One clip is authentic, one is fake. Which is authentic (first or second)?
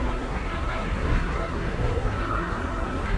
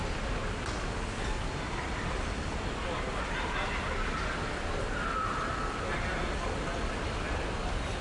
second